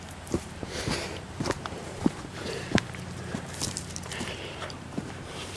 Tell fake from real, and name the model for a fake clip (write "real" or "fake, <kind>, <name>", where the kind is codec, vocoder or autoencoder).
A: fake, vocoder, BigVGAN v2